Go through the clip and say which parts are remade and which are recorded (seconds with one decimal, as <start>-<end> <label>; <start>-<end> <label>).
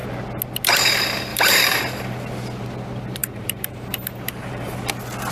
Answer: 0.0-1.3 recorded; 1.3-1.8 remade; 1.8-3.2 recorded; 3.2-4.6 remade; 4.6-5.3 recorded